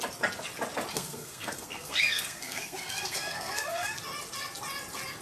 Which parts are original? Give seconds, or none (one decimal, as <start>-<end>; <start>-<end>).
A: 0.0-0.9; 4.0-5.2